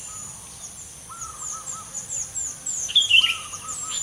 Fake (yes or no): no